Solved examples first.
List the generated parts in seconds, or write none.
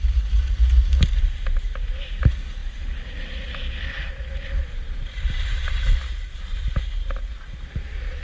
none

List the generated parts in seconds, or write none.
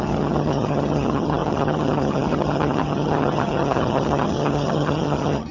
0.0-5.5 (vocoder, HiFi-GAN)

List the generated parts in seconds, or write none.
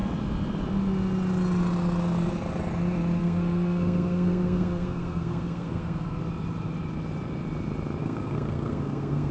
3.2-6.2 (codec, SNAC); 8.0-9.3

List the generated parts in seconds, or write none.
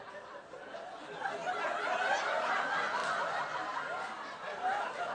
none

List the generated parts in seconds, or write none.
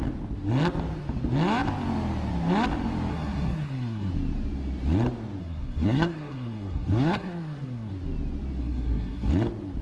3.1-4.1 (codec, SNAC); 5.4-7.9; 8.6-9.3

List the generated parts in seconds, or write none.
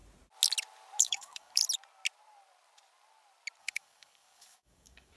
1.0-1.6 (codec, DAC); 3.6-5.2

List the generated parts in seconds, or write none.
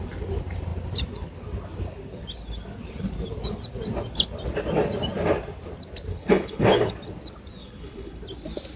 6.1-6.9 (codec, HILCodec); 7.6-8.2